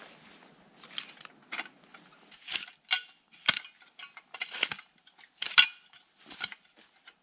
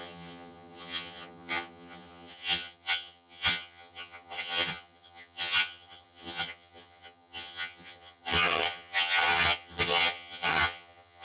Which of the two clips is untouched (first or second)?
first